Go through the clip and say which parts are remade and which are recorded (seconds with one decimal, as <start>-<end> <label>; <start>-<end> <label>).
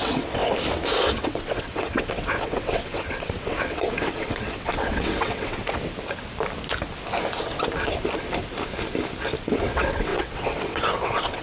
0.0-0.4 remade; 0.4-1.2 recorded; 1.2-5.6 remade; 5.6-9.4 recorded; 9.4-11.4 remade